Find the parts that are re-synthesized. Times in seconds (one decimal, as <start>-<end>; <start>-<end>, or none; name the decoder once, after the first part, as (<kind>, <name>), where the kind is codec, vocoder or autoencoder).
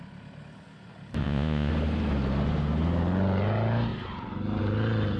1.2-1.7 (vocoder, Vocos)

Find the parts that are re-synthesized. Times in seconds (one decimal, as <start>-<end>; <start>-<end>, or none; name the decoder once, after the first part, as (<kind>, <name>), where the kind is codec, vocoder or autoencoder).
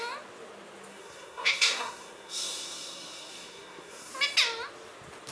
0.9-4.1 (codec, SNAC)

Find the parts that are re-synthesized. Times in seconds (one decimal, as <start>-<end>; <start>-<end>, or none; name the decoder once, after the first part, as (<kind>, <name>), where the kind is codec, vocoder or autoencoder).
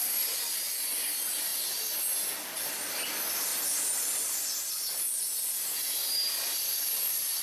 none